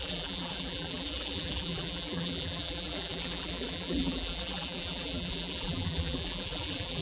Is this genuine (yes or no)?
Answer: no